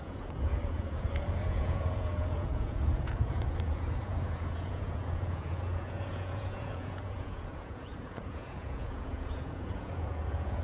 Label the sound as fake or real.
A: fake